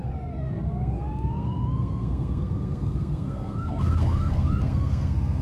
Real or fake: fake